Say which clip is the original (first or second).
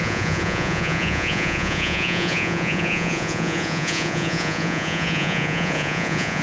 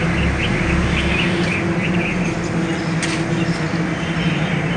second